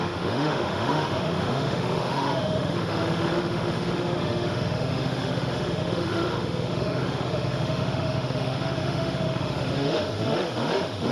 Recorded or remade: remade